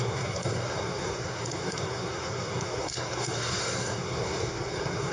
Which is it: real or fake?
fake